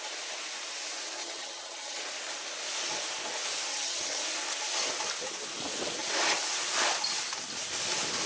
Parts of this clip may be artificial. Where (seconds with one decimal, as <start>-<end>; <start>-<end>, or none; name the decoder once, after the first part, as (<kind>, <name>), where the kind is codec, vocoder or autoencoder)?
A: 1.2-2.0 (vocoder, HiFi-GAN); 3.7-4.2